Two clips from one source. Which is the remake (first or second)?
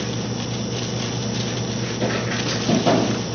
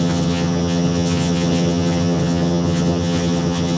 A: second